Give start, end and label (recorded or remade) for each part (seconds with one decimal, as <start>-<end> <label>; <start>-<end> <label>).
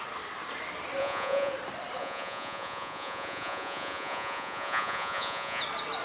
0.0-1.0 recorded; 1.0-1.5 remade; 1.5-2.0 recorded; 2.0-5.6 remade; 5.6-6.0 recorded